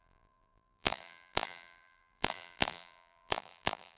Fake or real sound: fake